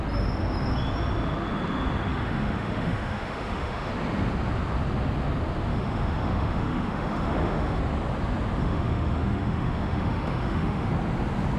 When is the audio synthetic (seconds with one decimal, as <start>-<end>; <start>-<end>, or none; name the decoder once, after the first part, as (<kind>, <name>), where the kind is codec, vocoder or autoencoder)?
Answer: 2.1-3.9 (autoencoder, DAC-VAE); 5.7-7.8; 8.6-10.9